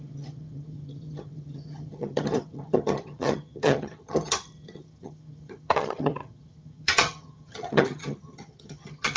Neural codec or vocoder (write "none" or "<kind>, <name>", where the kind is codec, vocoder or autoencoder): vocoder, HiFi-GAN